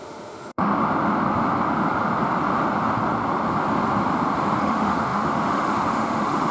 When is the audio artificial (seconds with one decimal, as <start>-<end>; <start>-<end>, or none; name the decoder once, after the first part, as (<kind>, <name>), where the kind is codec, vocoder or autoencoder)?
0.0-0.7 (autoencoder, DAC-VAE); 4.6-6.5